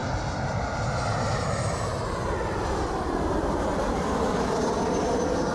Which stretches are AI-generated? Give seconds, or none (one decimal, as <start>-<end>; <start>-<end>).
3.3-3.7